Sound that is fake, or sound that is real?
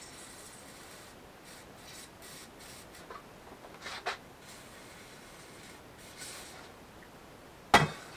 real